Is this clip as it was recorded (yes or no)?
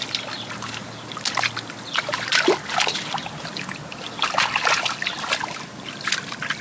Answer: yes